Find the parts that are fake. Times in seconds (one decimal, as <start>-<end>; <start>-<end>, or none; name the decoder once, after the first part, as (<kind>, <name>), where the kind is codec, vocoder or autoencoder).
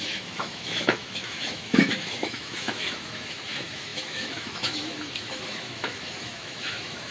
0.0-7.1 (autoencoder, DAC-VAE)